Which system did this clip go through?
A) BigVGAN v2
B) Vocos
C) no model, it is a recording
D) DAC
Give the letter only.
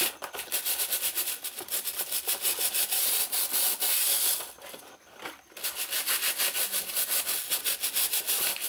C